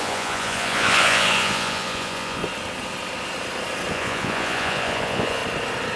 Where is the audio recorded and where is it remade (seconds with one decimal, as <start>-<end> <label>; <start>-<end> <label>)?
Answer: 0.0-2.4 remade; 2.4-3.9 recorded; 3.9-5.4 remade; 5.4-6.0 recorded